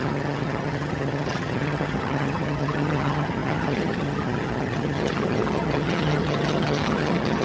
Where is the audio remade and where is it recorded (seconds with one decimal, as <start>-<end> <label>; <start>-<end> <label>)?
0.0-7.4 remade